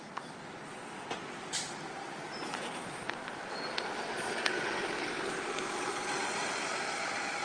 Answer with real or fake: real